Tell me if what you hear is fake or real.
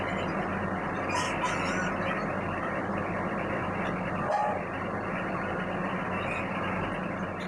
real